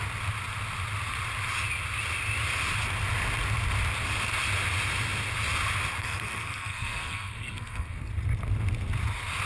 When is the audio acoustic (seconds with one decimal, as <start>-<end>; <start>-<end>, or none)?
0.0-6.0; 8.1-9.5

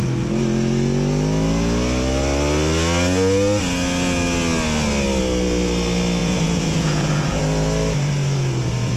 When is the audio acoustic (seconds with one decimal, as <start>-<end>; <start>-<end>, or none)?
0.0-6.2; 7.4-9.0

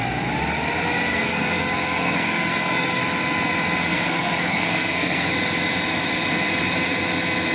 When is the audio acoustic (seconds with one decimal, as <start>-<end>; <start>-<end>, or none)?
0.0-1.1; 3.0-3.8; 5.3-7.5

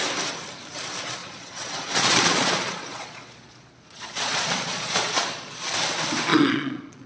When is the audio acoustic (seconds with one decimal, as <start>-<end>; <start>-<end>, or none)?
0.0-1.2; 5.5-6.3

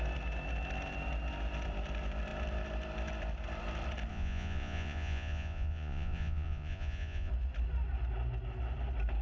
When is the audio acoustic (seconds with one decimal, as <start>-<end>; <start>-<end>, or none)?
0.0-4.1; 7.3-9.2